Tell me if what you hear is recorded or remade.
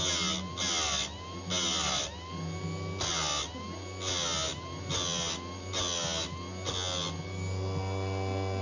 recorded